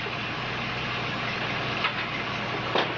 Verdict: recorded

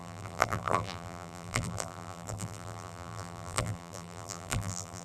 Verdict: remade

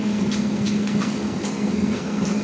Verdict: remade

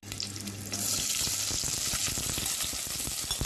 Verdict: recorded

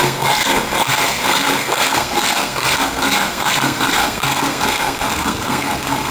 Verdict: remade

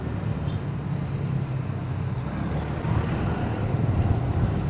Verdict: recorded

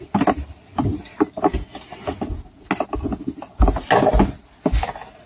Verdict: recorded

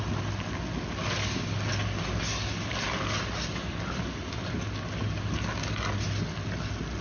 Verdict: recorded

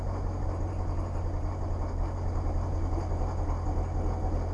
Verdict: recorded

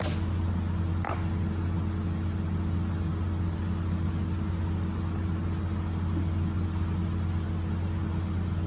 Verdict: recorded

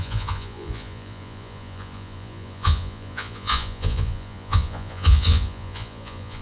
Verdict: remade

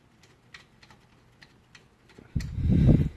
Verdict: recorded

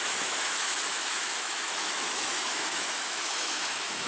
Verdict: remade